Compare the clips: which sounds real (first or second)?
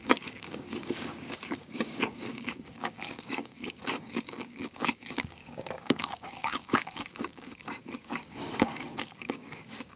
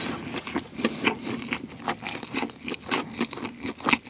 second